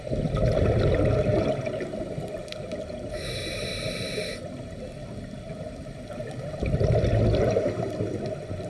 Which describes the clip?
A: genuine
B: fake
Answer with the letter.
A